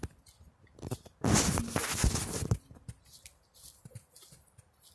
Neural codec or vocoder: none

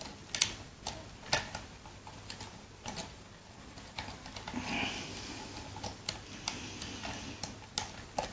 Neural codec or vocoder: none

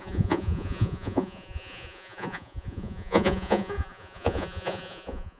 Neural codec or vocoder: vocoder, Vocos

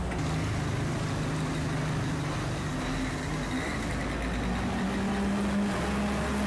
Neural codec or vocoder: none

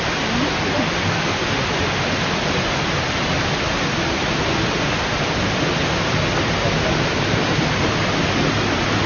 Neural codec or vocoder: none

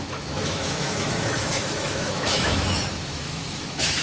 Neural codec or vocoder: autoencoder, DAC-VAE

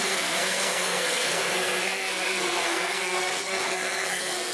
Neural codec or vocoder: codec, SNAC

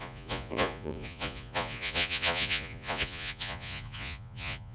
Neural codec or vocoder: vocoder, Vocos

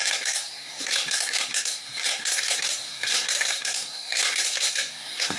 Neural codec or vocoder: codec, SNAC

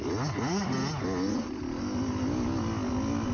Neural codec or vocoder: none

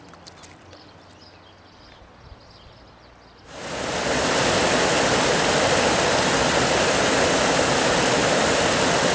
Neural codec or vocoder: none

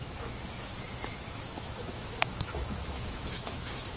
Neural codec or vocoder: autoencoder, DAC-VAE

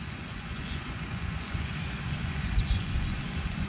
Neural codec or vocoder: vocoder, Vocos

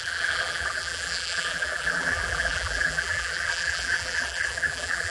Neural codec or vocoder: vocoder, BigVGAN v2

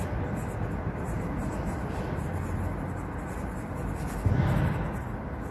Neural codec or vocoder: none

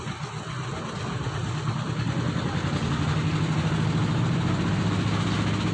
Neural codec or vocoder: none